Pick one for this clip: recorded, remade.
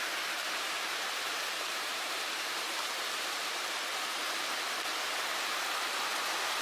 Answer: remade